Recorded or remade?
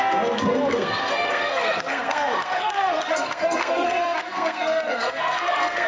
remade